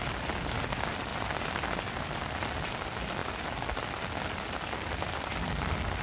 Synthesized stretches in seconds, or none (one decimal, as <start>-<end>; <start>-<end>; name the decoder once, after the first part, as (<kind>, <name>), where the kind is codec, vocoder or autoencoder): none